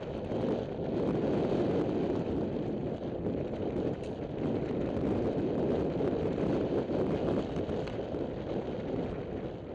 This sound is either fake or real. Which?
real